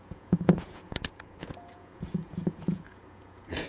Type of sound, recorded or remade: remade